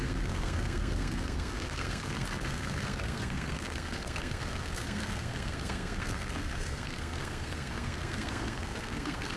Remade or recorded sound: remade